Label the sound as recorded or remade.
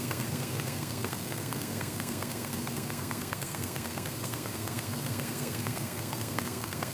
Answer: remade